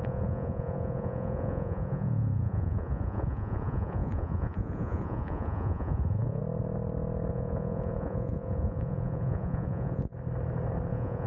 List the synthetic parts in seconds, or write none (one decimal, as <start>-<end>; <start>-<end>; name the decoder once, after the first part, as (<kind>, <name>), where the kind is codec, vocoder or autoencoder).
0.0-6.4 (vocoder, Vocos); 7.3-10.1; 10.9-11.3